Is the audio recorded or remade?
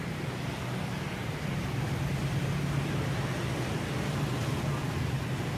recorded